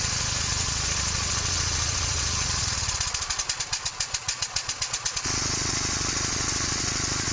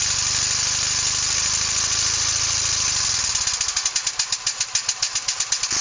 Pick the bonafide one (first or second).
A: second